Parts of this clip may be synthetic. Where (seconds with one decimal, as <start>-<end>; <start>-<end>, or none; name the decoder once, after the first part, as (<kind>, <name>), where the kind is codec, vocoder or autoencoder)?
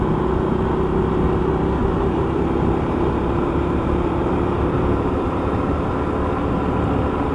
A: 1.8-5.9 (vocoder, BigVGAN v2)